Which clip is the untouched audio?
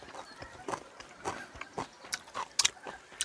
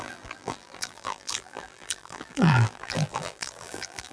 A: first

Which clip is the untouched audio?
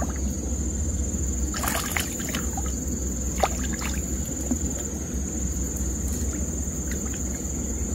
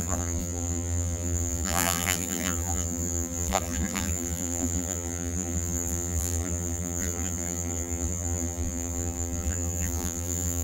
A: first